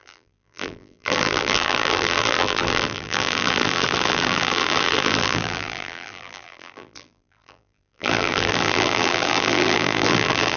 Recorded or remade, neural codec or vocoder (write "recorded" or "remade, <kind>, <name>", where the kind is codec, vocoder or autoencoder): remade, vocoder, BigVGAN v2